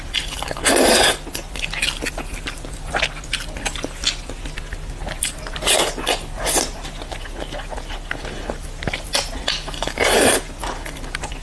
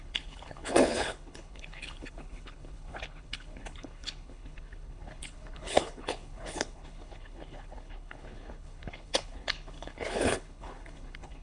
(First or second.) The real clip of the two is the first